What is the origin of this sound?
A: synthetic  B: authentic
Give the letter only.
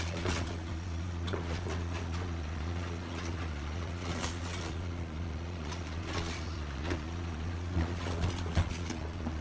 A